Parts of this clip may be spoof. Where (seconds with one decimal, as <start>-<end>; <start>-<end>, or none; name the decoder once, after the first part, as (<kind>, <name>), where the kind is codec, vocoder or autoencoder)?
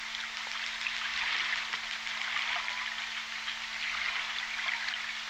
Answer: none